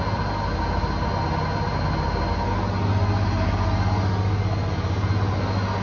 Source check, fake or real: real